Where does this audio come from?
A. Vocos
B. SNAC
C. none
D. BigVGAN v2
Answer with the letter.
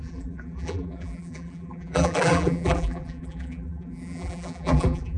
D